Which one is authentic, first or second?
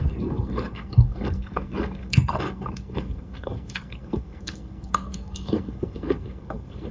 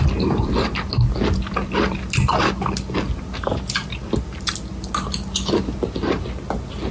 second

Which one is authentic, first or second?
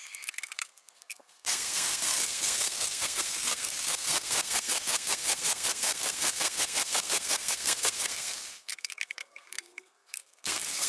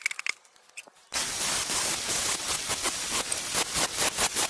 second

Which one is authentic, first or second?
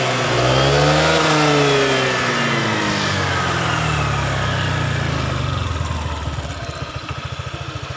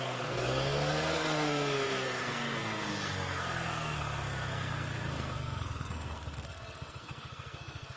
first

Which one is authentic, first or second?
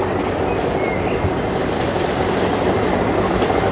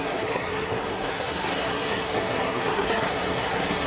first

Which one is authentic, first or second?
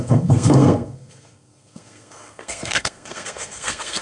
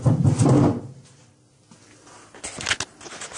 second